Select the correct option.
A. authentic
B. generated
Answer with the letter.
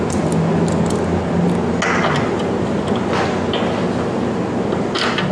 A